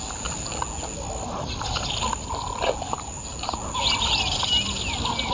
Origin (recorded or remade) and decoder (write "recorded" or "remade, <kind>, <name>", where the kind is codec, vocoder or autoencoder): recorded